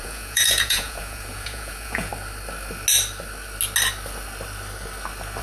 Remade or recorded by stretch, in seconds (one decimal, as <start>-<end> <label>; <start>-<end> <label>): 0.0-2.1 remade; 2.1-5.4 recorded